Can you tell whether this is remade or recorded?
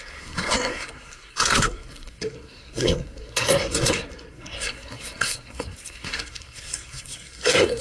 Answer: remade